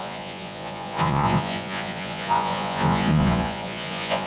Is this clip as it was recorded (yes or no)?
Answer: no